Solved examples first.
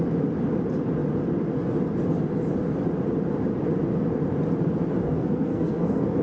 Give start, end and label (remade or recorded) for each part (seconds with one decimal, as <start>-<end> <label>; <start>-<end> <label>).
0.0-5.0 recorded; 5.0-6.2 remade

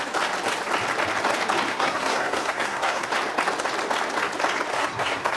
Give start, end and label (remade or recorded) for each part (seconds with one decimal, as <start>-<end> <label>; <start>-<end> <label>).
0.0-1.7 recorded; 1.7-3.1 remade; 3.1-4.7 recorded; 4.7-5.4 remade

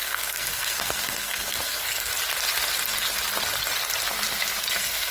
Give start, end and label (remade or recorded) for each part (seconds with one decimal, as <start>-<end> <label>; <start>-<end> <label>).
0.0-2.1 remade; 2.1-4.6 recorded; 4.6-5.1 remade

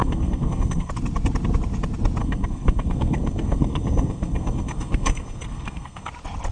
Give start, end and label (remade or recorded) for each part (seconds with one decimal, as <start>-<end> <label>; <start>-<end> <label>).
0.0-0.9 remade; 0.9-2.2 recorded; 2.2-6.1 remade; 6.1-6.5 recorded

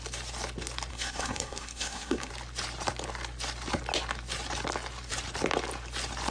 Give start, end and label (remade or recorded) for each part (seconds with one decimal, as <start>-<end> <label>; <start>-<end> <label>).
0.0-0.9 recorded; 0.9-2.3 remade; 2.3-6.3 recorded

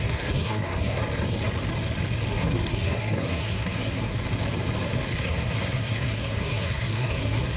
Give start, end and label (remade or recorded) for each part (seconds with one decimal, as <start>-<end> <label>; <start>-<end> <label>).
0.0-1.0 remade; 1.0-2.3 recorded; 2.3-4.1 remade; 4.1-5.2 recorded; 5.2-7.6 remade

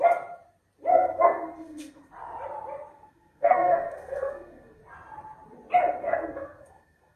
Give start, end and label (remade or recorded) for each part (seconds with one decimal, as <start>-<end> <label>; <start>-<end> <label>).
0.0-0.9 recorded; 0.9-2.1 remade; 2.1-2.9 recorded; 2.9-4.8 remade; 4.8-6.0 recorded; 6.0-7.2 remade